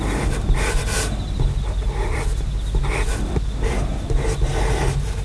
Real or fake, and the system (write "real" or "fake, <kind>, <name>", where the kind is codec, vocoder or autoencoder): real